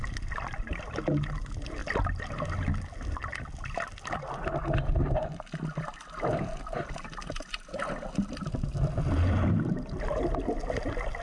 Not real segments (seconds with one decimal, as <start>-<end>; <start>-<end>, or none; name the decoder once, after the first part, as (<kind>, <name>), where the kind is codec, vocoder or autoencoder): none